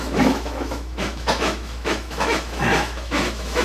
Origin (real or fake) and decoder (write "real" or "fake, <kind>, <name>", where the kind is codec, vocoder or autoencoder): fake, autoencoder, DAC-VAE